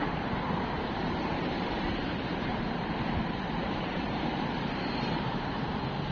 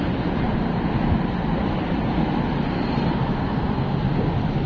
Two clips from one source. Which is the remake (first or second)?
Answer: first